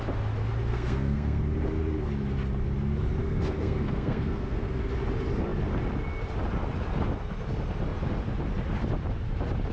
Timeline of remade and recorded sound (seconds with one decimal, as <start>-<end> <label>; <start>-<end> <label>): 0.0-0.7 recorded; 0.7-1.4 remade; 1.4-3.2 recorded; 3.2-4.9 remade; 4.9-9.7 recorded